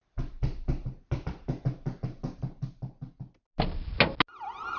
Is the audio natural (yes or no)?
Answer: yes